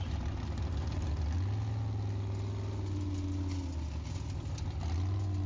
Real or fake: real